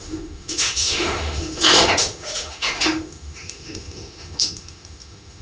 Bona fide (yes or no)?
no